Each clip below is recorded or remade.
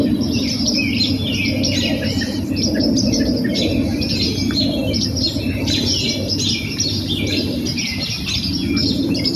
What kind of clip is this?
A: recorded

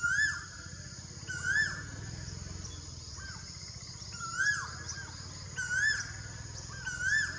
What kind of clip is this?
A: recorded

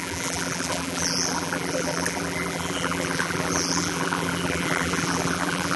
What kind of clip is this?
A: remade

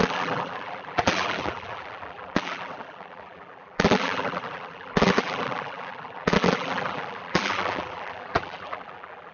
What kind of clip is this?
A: remade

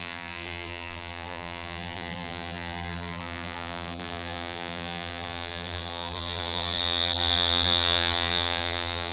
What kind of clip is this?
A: remade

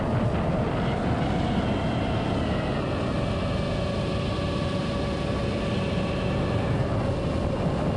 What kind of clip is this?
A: recorded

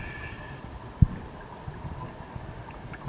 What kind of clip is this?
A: recorded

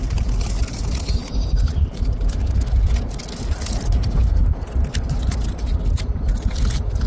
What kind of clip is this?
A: recorded